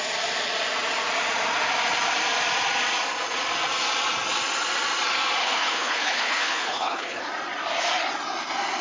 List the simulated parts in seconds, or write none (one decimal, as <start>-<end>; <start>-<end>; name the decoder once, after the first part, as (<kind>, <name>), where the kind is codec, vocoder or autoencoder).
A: 5.4-7.2 (codec, HILCodec)